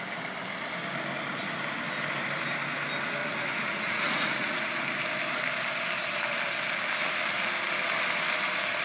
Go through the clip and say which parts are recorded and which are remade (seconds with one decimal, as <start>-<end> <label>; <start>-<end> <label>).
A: 0.0-3.2 recorded; 3.2-4.7 remade; 4.7-8.8 recorded